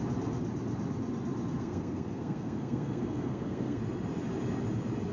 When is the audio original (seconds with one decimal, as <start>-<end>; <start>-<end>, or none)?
0.0-1.6; 3.8-5.1